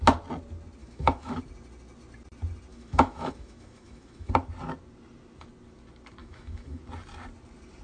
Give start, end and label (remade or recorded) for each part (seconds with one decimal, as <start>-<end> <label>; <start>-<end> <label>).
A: 0.0-0.8 recorded; 0.8-1.4 remade; 1.4-2.7 recorded; 2.7-4.3 remade; 4.3-6.2 recorded; 6.2-6.8 remade; 6.8-7.8 recorded

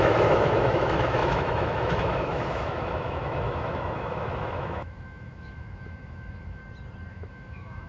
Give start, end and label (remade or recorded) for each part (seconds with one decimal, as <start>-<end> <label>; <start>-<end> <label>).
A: 0.0-6.6 remade; 6.6-7.1 recorded; 7.1-7.9 remade

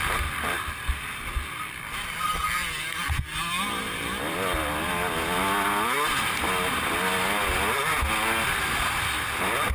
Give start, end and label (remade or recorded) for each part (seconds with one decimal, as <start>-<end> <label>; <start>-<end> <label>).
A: 0.0-9.7 recorded

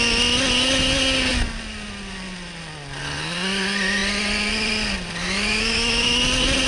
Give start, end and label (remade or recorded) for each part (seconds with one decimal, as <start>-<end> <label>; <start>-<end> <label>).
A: 0.0-5.2 recorded; 5.2-6.2 remade; 6.2-6.7 recorded

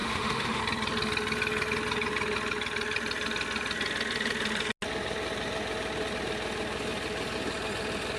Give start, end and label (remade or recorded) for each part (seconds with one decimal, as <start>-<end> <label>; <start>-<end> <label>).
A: 0.0-0.6 remade; 0.6-8.2 recorded

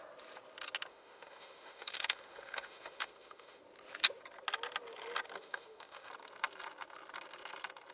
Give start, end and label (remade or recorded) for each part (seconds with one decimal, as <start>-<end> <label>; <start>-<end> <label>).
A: 0.0-0.9 recorded; 0.9-3.6 remade; 3.6-5.4 recorded; 5.4-6.1 remade; 6.1-7.9 recorded

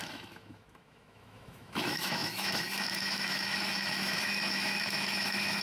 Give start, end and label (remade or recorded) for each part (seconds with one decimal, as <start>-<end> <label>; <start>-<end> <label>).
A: 0.0-5.6 remade